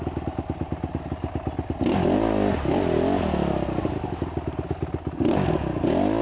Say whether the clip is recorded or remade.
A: recorded